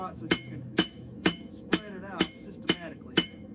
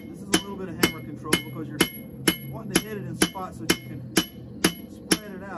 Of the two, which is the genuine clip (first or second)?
second